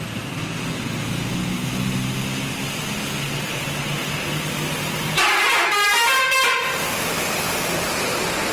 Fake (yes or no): no